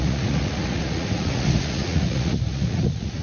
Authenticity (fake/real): fake